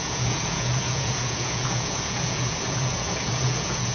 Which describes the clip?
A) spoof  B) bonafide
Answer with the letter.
A